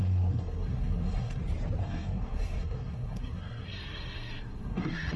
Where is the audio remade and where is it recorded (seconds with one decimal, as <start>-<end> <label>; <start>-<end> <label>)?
0.0-1.4 remade; 1.4-1.8 recorded; 1.8-5.2 remade